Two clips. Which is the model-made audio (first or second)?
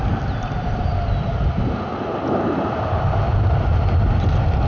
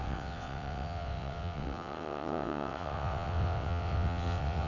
second